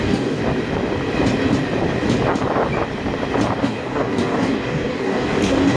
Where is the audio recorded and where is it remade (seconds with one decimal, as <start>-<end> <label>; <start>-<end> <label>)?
0.0-0.4 remade; 0.4-3.6 recorded; 3.6-5.8 remade